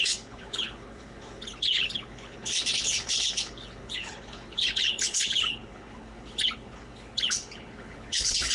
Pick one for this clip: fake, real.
fake